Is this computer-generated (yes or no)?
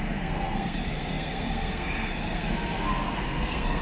yes